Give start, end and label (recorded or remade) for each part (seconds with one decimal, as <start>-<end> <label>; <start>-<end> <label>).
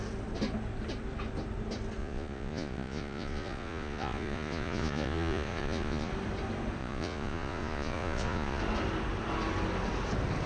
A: 0.0-2.0 recorded; 2.0-6.1 remade; 6.1-6.8 recorded; 6.8-8.6 remade; 8.6-10.5 recorded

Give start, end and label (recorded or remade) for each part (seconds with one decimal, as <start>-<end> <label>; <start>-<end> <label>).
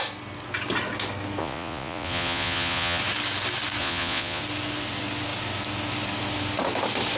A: 0.0-1.4 recorded; 1.4-3.0 remade; 3.0-3.8 recorded; 3.8-4.4 remade; 4.4-7.2 recorded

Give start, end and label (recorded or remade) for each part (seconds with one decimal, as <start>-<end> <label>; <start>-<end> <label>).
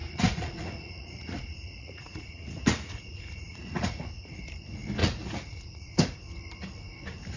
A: 0.0-4.4 remade; 4.4-5.0 recorded; 5.0-5.9 remade; 5.9-7.4 recorded